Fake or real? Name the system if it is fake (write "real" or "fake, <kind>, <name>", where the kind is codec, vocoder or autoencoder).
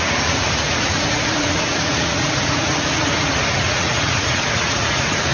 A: fake, vocoder, Vocos